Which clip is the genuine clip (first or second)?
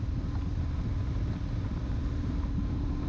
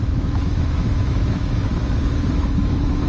first